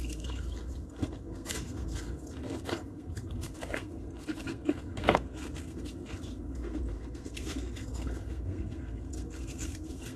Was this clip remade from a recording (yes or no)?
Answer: yes